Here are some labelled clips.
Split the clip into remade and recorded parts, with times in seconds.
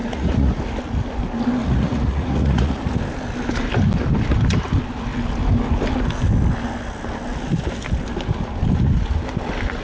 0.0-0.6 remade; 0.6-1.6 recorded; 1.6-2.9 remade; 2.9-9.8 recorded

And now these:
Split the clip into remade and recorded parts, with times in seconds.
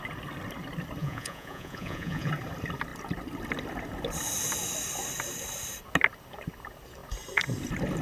0.0-1.0 recorded; 1.0-2.3 remade; 2.3-8.0 recorded